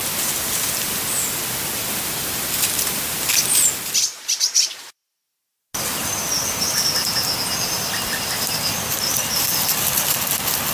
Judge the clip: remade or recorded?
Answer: recorded